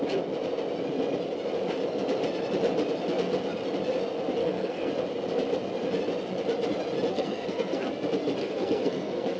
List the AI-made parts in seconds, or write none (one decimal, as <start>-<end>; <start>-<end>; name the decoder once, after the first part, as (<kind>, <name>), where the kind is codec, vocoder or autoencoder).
4.4-4.9 (codec, SNAC); 7.1-7.9; 8.4-9.4